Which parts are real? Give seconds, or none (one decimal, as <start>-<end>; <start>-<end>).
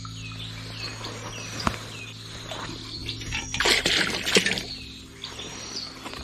0.0-6.2